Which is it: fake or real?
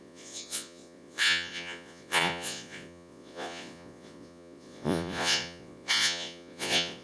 fake